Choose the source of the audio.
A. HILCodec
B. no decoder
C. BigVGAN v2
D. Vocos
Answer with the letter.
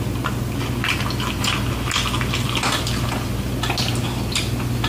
B